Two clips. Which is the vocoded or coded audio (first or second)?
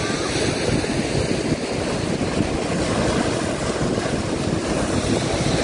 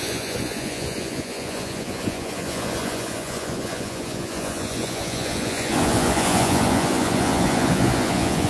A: second